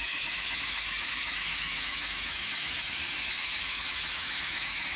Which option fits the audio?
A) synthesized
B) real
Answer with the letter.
A